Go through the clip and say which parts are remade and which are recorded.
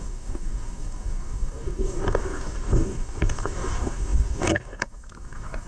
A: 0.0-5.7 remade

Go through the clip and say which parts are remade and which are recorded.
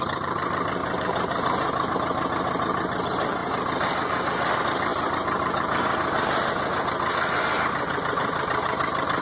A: 0.0-0.8 recorded; 0.8-1.9 remade; 1.9-8.2 recorded; 8.2-9.2 remade